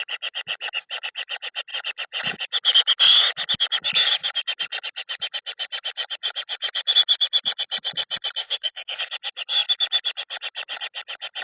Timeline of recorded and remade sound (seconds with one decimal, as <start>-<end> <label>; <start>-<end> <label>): 0.0-8.4 recorded; 8.4-9.0 remade; 9.0-11.4 recorded